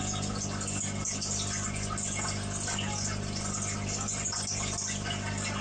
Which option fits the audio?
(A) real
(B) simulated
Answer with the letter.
A